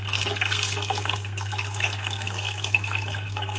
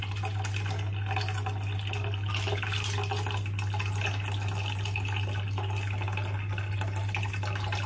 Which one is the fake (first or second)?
first